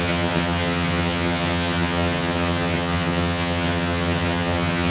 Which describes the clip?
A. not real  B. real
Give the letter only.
A